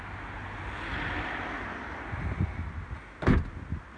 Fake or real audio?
real